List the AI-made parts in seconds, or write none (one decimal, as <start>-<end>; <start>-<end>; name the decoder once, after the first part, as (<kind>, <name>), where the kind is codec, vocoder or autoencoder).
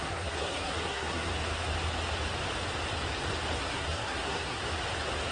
0.0-1.3 (codec, SNAC); 3.6-4.6